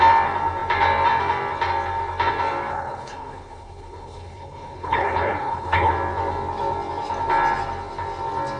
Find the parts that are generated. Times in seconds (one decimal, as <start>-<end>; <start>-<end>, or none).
2.7-5.9